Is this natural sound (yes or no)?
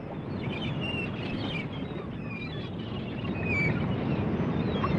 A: yes